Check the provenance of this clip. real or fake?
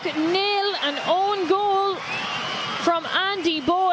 real